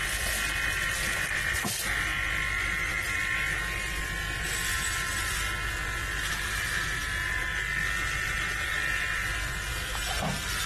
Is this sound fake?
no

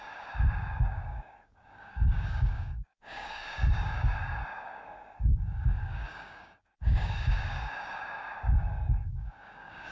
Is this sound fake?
yes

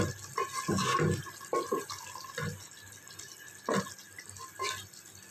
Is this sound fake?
no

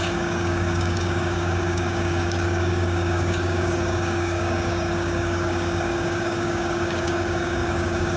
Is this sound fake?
yes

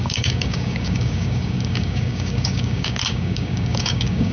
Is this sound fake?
yes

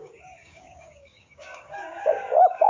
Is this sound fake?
yes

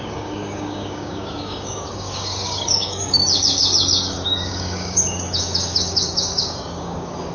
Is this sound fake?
yes